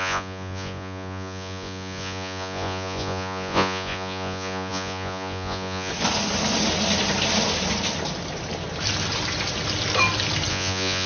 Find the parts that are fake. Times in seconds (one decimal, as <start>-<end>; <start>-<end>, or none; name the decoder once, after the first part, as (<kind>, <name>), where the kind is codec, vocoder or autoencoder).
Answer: 0.0-5.9 (vocoder, Vocos); 10.5-11.1